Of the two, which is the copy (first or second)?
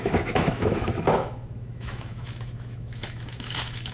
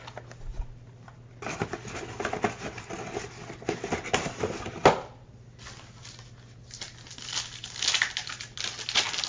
first